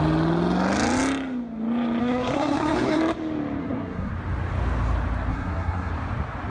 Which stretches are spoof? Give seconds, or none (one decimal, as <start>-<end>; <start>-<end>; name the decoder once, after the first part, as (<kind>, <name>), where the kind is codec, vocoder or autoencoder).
2.0-3.0 (codec, SNAC); 3.6-4.1; 5.3-5.9